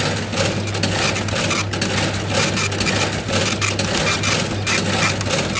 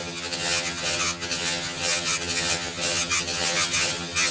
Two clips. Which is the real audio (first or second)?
first